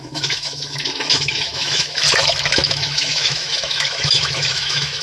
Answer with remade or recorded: remade